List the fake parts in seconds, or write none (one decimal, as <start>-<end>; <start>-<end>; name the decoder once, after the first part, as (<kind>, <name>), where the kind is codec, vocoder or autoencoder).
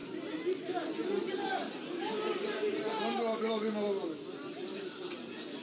none